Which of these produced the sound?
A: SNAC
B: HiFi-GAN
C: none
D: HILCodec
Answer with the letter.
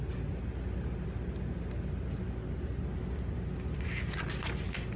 C